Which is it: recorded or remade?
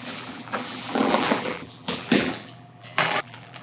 remade